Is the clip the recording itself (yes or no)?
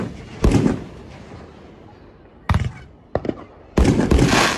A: yes